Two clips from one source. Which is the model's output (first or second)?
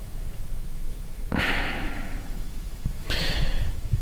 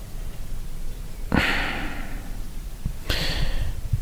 first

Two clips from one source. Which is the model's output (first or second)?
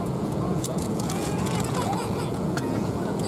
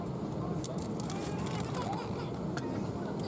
first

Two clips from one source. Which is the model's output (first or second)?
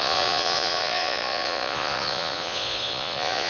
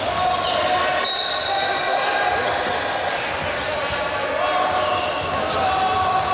first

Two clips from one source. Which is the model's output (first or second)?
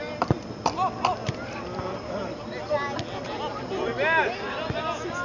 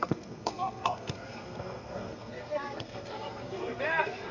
second